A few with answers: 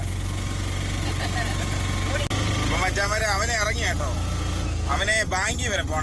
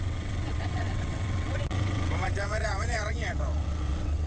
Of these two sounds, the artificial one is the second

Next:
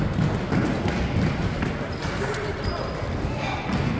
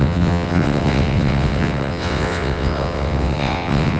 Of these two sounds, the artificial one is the second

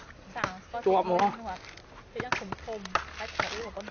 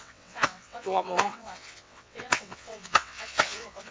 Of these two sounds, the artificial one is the second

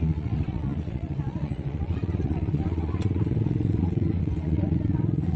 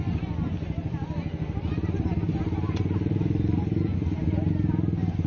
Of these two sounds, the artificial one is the first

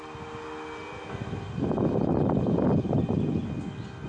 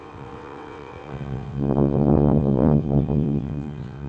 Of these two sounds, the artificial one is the second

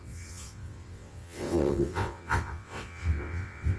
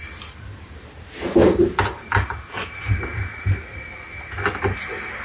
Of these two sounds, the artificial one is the first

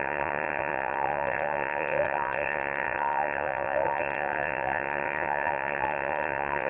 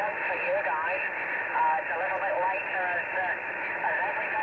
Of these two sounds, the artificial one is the first